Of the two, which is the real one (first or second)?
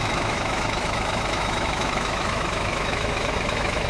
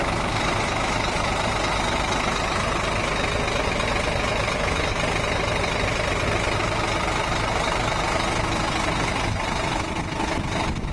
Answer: second